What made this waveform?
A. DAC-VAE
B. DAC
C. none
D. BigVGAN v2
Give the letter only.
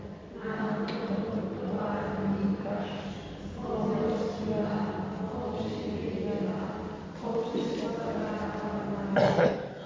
C